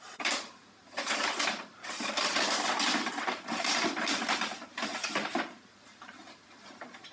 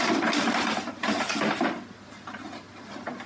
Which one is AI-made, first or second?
first